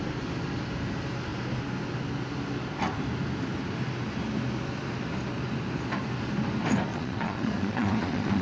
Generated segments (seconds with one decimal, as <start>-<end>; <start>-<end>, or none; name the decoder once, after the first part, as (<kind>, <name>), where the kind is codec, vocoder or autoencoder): 6.9-8.4 (vocoder, Vocos)